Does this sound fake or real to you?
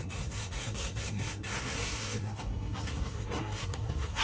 fake